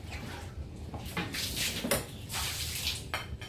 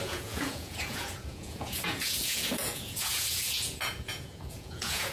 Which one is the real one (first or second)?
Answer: first